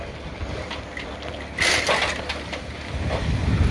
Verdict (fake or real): real